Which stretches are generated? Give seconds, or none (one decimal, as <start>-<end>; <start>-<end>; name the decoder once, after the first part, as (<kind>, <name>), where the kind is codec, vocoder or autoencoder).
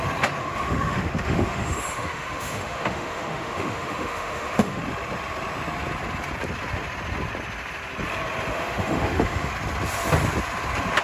0.4-4.8 (autoencoder, DAC-VAE); 8.5-9.5